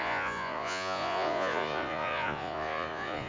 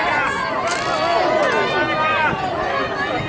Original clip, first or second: second